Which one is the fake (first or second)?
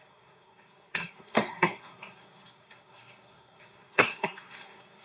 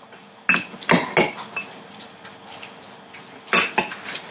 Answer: first